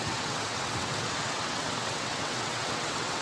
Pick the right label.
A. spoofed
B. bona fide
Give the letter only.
A